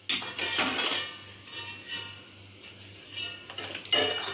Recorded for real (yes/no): yes